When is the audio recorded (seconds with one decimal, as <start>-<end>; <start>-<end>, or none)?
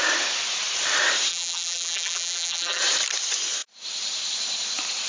0.0-1.3; 2.8-5.1